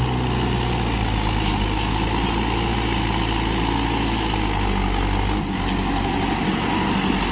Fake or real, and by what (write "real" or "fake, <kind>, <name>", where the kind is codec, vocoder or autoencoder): real